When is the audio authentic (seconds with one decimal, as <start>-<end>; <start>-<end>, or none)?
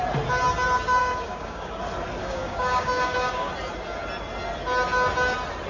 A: 0.0-1.0; 1.8-2.2; 3.5-5.7